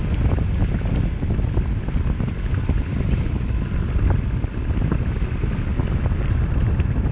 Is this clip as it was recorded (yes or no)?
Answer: yes